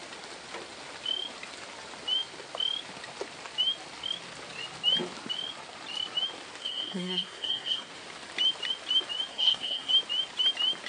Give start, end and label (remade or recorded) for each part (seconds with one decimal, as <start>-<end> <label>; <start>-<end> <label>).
0.0-6.6 recorded; 6.6-7.9 remade; 7.9-9.3 recorded; 9.3-9.9 remade; 9.9-10.9 recorded